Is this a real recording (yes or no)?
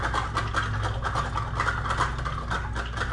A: yes